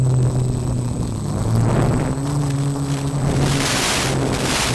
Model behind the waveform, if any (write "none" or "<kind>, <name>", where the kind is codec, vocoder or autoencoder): none